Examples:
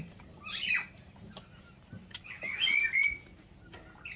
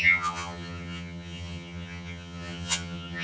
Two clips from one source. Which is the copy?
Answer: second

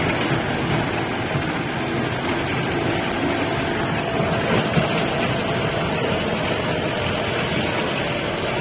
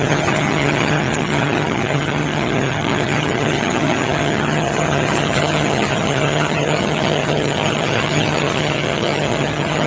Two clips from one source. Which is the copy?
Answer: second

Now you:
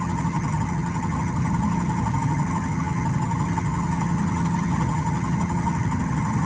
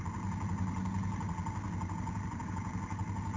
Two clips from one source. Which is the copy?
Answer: first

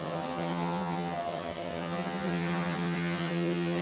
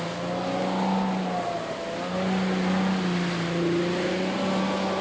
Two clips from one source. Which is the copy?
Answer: first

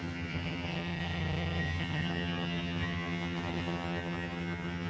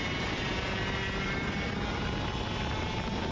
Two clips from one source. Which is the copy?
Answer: first